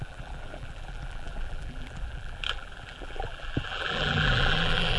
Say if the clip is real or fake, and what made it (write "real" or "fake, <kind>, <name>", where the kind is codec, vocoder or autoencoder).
fake, vocoder, BigVGAN v2